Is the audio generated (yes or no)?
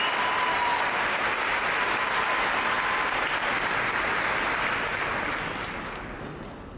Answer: no